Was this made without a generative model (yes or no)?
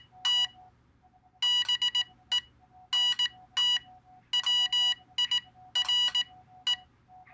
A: yes